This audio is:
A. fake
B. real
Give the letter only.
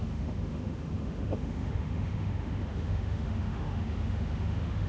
A